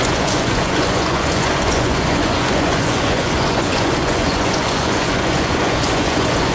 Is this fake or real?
fake